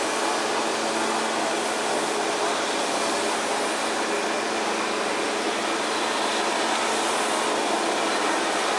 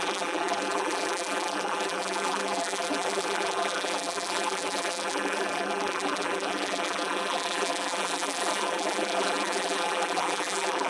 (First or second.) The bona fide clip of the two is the first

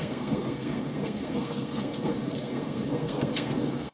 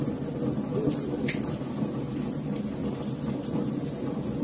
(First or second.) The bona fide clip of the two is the second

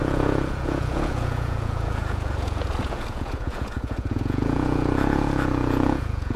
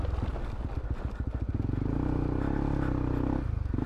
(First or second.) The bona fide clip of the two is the second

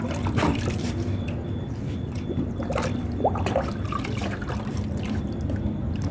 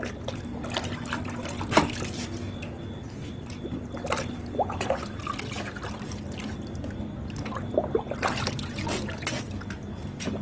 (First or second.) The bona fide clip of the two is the second